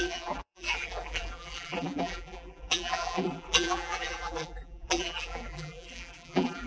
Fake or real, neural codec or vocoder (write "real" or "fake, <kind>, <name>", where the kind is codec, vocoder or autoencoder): fake, vocoder, BigVGAN v2